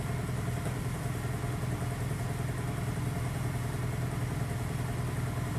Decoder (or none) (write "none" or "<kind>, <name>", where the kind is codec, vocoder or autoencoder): none